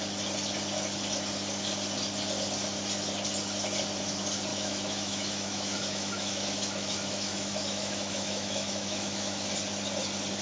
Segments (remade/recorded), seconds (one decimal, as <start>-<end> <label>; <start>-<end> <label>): 0.0-4.5 recorded; 4.5-9.5 remade; 9.5-10.4 recorded